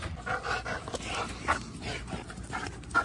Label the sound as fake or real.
real